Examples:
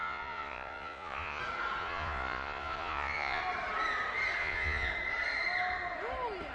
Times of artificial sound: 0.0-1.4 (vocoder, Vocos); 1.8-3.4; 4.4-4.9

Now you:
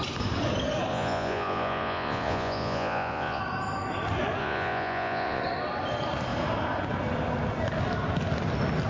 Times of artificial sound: 0.9-3.4 (vocoder, Vocos); 4.4-5.4